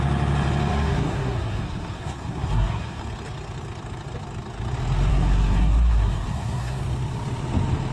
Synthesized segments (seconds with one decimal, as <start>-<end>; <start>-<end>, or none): 0.7-3.0; 5.1-6.8